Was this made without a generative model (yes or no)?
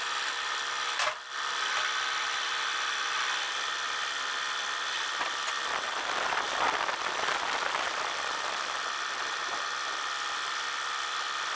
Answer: yes